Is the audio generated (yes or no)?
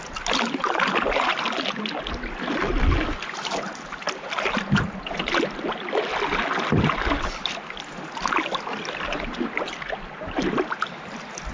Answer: no